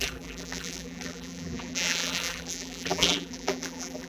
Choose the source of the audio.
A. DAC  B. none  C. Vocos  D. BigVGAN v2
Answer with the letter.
D